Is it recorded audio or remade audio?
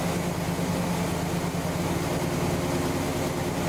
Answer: recorded